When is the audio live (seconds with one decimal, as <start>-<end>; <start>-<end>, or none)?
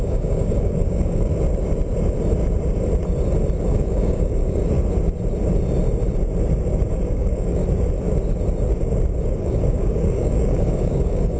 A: 1.3-3.7; 4.6-6.9; 7.6-9.2